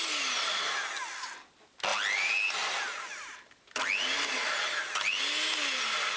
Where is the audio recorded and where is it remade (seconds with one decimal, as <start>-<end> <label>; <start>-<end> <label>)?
0.0-6.2 recorded